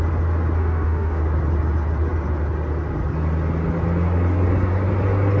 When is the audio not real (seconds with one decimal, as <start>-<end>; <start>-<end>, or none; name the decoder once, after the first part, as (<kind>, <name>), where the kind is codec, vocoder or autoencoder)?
0.6-1.2 (autoencoder, DAC-VAE)